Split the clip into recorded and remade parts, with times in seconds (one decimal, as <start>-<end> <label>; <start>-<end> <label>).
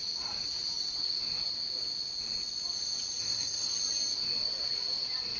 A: 0.0-3.2 recorded; 3.2-3.7 remade; 3.7-5.4 recorded